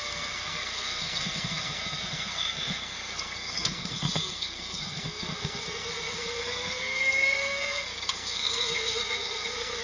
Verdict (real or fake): fake